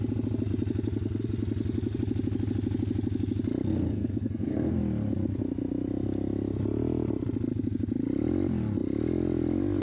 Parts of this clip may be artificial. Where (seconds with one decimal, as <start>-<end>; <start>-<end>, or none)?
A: 3.7-4.8